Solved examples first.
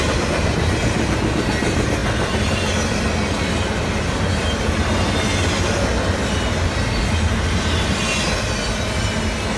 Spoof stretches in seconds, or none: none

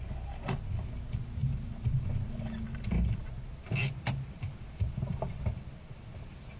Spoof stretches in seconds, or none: none